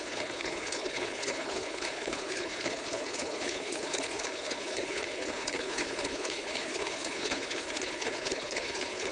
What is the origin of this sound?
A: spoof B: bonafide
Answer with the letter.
A